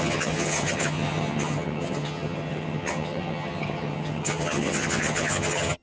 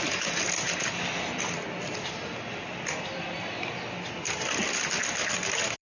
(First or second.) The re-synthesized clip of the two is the first